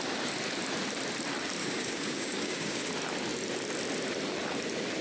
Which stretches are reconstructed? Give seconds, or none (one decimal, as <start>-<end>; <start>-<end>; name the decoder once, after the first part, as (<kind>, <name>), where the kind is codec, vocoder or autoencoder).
1.6-2.9 (codec, DAC)